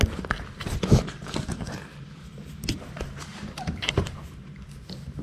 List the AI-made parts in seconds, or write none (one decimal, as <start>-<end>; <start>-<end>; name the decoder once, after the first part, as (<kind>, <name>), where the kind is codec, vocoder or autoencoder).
3.3-4.2 (vocoder, BigVGAN v2)